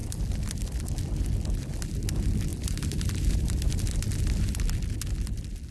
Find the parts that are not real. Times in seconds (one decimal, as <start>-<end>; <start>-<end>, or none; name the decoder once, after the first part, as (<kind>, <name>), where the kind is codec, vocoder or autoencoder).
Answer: 0.0-0.8 (vocoder, BigVGAN v2); 2.5-4.8